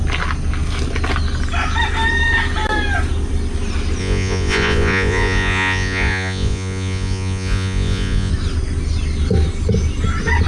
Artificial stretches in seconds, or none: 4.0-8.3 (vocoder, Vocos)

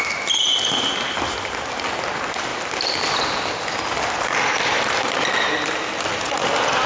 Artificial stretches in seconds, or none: none

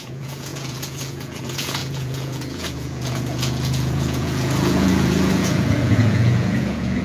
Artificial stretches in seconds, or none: 0.0-7.0 (vocoder, Vocos)

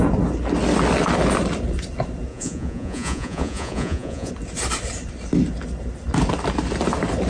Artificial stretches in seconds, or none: 2.3-4.3 (vocoder, Vocos)

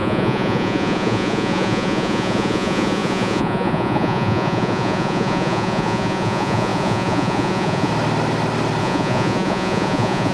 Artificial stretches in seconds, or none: 0.0-7.9 (vocoder, Vocos); 8.8-10.3

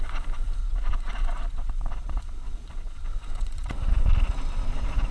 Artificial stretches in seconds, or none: 0.6-3.7 (vocoder, Vocos)

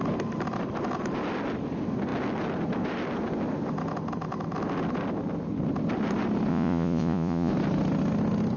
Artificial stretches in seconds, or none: 6.5-7.5 (vocoder, Vocos)